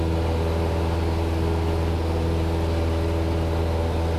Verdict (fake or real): real